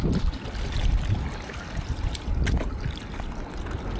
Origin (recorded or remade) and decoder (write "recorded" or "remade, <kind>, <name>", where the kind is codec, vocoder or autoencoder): recorded